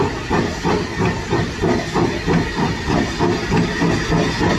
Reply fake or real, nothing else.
real